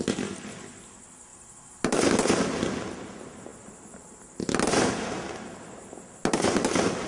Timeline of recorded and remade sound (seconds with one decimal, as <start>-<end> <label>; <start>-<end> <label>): 0.0-7.1 recorded